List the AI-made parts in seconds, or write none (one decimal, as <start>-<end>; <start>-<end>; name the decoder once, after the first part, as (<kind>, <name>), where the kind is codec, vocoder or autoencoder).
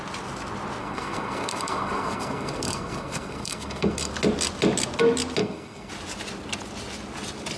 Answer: 0.8-4.1 (codec, SNAC); 5.4-5.9